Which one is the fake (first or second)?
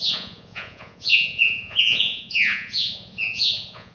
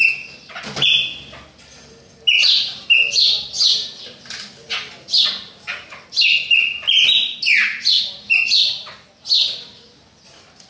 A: first